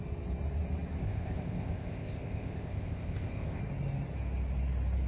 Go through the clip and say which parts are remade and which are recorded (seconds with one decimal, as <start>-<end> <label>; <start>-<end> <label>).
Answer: 0.0-1.0 recorded; 1.0-3.6 remade; 3.6-5.1 recorded